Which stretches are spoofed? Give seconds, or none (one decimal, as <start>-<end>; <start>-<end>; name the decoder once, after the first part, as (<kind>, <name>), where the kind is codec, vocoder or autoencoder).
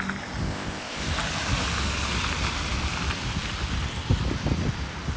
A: 0.4-1.1 (codec, ZipCodec)